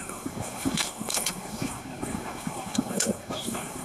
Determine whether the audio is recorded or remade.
remade